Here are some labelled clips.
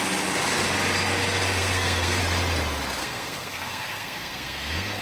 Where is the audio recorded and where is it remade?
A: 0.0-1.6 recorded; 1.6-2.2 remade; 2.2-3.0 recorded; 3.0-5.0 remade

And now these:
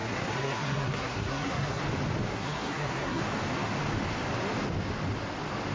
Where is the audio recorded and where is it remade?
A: 0.0-1.8 remade; 1.8-2.3 recorded; 2.3-3.2 remade; 3.2-5.7 recorded